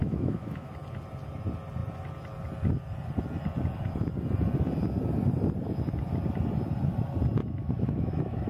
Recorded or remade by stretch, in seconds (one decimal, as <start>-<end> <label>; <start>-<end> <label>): 0.0-0.7 remade; 0.7-7.4 recorded; 7.4-8.5 remade